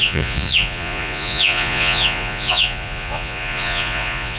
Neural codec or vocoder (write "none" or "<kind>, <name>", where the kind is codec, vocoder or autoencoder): vocoder, Vocos